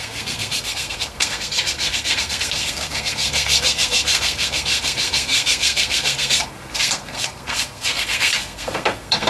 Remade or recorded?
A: remade